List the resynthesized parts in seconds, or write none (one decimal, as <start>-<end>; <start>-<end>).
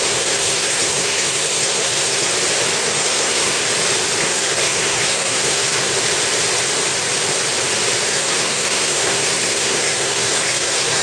0.0-2.3; 2.8-3.6; 4.2-5.9; 8.1-11.0